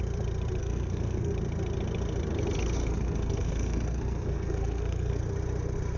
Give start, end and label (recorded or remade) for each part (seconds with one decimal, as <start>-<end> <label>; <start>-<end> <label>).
0.0-0.6 recorded; 0.6-1.3 remade; 1.3-2.8 recorded; 2.8-5.2 remade; 5.2-6.0 recorded